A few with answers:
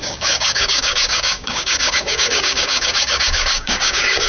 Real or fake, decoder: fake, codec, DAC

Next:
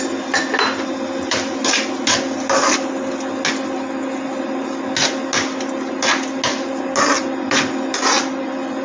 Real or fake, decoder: real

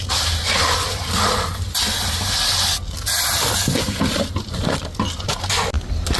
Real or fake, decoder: real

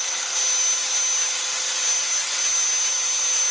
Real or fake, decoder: real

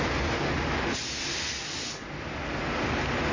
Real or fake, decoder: real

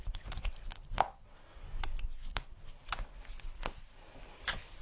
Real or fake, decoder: fake, vocoder, BigVGAN v2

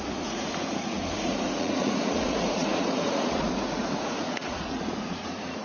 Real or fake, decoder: fake, vocoder, Vocos